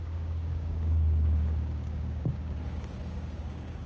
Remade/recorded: remade